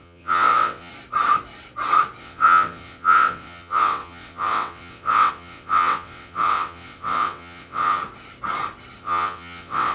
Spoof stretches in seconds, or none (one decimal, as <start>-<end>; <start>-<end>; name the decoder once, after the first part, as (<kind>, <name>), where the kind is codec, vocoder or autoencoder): 0.0-0.9 (vocoder, WaveNeXt); 2.2-8.0; 9.0-9.9